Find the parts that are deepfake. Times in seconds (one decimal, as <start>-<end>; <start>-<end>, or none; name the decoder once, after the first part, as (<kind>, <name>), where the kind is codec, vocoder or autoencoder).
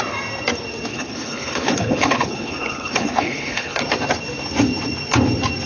0.9-3.8 (codec, HILCodec)